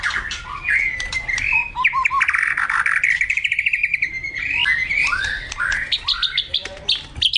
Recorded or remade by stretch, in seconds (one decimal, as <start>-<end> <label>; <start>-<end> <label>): 0.0-1.6 remade; 1.6-3.1 recorded; 3.1-4.1 remade; 4.1-4.9 recorded; 4.9-6.6 remade; 6.6-7.4 recorded